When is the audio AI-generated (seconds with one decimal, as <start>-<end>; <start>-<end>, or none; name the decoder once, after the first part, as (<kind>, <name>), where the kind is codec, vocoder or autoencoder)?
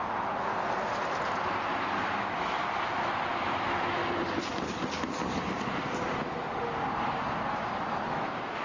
0.0-0.5 (autoencoder, DAC-VAE); 2.0-2.5; 3.3-4.0; 8.1-8.6